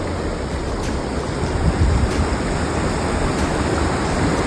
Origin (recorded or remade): recorded